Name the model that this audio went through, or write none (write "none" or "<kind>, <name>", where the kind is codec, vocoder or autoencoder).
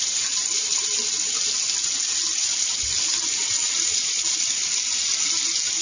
none